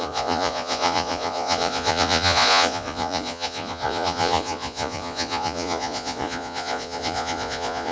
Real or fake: fake